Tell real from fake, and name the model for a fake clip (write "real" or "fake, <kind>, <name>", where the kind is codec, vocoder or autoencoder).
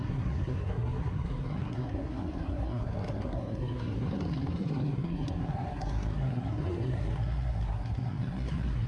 fake, codec, SNAC